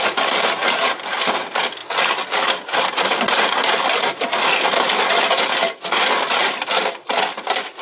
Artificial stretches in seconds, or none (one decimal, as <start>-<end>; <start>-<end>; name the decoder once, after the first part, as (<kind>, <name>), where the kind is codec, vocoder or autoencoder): none